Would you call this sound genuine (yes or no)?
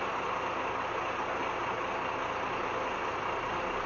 yes